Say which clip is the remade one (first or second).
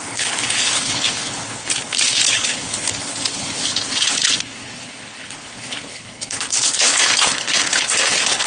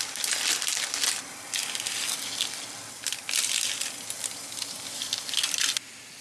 first